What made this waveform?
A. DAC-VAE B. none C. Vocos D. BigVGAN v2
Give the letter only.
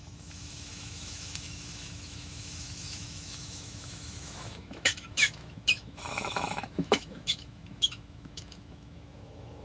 A